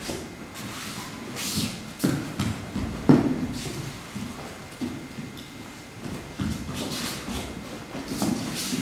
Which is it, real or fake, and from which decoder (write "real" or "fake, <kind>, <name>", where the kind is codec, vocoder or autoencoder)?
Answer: real